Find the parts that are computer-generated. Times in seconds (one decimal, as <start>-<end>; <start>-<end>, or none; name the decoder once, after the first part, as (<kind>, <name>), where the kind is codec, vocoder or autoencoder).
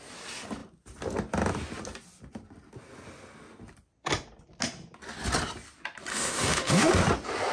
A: 6.1-6.9 (autoencoder, DAC-VAE)